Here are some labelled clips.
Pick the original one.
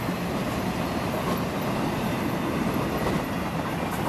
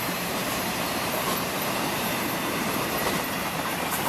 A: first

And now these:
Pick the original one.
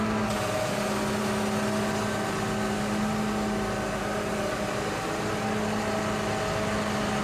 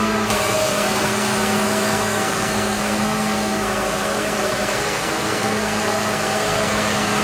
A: first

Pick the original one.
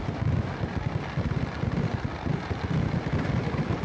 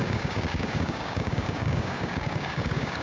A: first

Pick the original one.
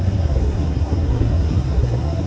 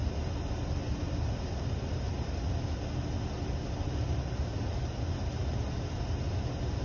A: second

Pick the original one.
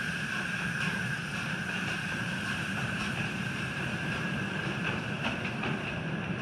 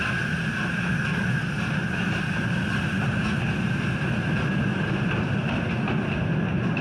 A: second